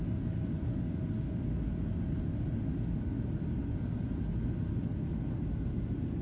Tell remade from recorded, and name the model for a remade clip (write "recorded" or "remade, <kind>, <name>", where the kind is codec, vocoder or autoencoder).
recorded